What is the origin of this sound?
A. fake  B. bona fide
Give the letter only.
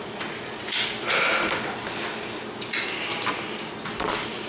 B